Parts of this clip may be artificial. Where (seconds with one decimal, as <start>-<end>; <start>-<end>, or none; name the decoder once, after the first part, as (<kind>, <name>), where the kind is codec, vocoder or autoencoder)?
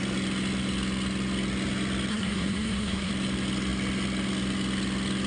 2.1-3.1 (codec, SNAC)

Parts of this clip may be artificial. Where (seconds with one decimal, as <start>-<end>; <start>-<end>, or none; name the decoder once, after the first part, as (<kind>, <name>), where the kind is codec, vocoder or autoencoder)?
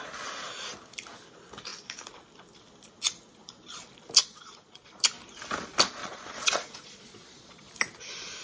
4.2-5.0 (vocoder, Vocos); 6.0-7.7